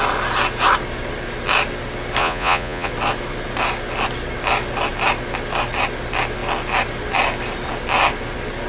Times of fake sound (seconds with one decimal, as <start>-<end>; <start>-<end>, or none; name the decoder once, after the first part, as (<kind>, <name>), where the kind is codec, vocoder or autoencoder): 2.2-2.9 (vocoder, Vocos)